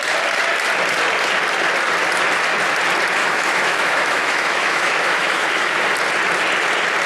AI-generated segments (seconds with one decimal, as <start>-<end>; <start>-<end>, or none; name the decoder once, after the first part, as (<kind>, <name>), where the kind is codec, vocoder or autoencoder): 3.2-5.8 (autoencoder, DAC-VAE)